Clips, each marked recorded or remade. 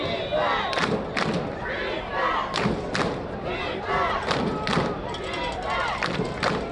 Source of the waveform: recorded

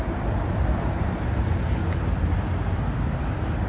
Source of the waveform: remade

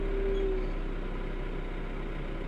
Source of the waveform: recorded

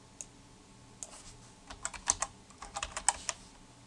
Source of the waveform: recorded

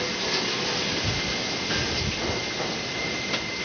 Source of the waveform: recorded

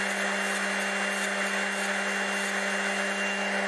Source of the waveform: recorded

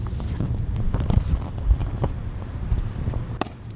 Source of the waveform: remade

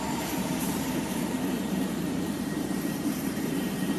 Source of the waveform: remade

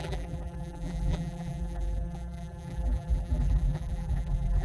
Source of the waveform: remade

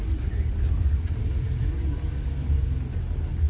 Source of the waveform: recorded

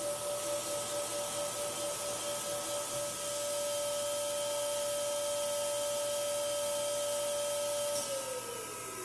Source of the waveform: recorded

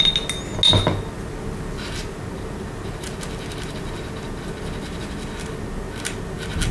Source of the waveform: recorded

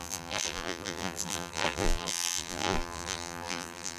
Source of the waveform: remade